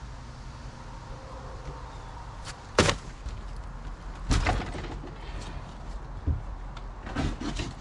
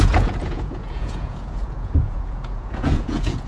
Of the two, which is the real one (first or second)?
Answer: first